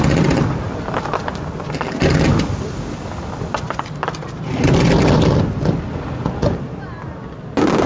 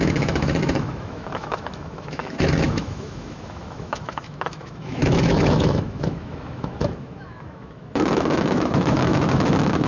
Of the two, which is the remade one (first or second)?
second